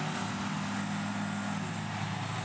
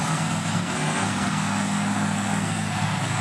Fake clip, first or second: second